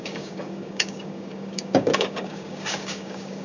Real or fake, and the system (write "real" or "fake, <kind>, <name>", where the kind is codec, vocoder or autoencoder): fake, codec, DAC